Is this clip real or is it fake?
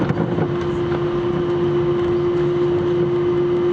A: real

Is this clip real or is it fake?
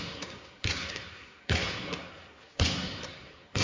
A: fake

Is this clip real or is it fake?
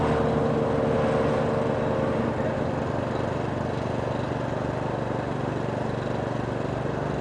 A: real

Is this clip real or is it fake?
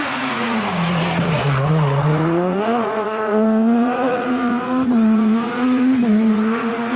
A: fake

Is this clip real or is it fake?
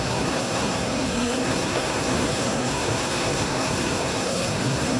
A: fake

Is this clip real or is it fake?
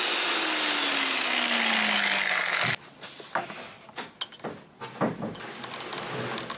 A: real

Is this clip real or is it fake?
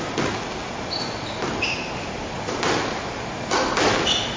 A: real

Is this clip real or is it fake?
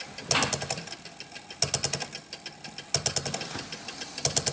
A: real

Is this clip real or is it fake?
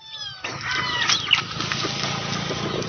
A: real